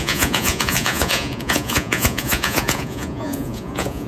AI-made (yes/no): yes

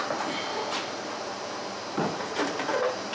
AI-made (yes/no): yes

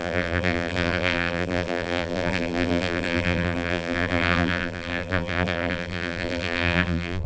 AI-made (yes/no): yes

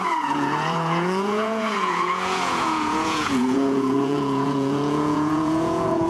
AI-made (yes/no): yes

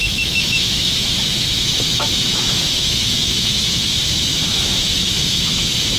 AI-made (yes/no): yes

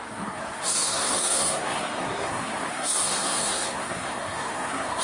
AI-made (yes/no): yes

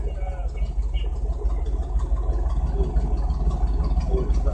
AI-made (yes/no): no